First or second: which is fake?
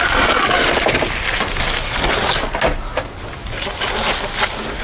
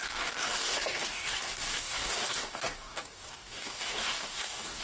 second